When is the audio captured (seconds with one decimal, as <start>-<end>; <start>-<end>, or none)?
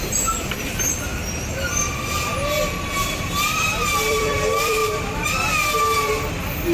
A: 1.1-3.0; 4.8-6.3